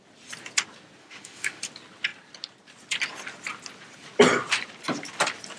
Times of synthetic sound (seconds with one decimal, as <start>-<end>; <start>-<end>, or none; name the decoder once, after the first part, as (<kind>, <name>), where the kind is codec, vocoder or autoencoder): 1.0-1.6 (autoencoder, DAC-VAE)